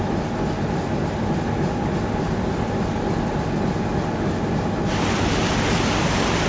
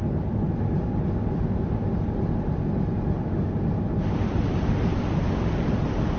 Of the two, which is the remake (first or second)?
second